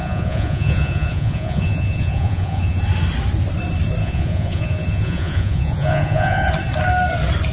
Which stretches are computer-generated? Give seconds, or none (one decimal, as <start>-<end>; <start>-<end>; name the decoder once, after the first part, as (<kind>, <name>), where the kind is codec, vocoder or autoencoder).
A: 0.0-2.8 (vocoder, Vocos); 4.0-6.5